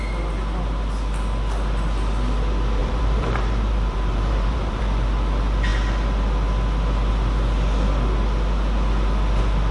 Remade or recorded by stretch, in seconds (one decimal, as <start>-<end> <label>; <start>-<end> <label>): 0.0-2.8 recorded; 2.8-4.8 remade; 4.8-9.7 recorded

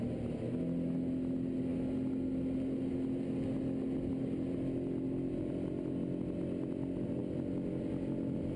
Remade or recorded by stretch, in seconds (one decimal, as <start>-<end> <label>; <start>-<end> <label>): 0.0-8.6 recorded

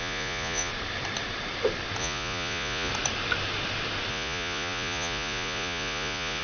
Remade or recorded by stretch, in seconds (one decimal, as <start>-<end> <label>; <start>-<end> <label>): 0.0-0.7 remade; 0.7-2.0 recorded; 2.0-2.9 remade; 2.9-4.1 recorded; 4.1-6.4 remade

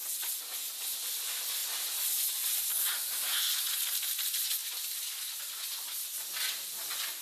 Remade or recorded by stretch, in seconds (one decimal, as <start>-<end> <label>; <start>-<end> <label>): 0.0-7.2 recorded

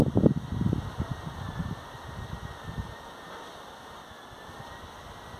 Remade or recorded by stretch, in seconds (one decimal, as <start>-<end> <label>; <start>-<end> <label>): 0.0-5.4 recorded

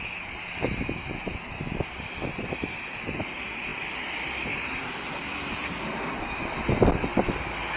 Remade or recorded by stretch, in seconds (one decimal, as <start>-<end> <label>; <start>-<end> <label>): 0.0-7.8 recorded